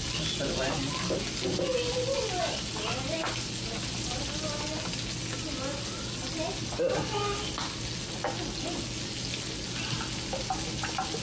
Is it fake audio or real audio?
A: real